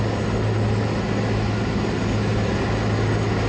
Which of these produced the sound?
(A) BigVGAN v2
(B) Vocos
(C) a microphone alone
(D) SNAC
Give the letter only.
C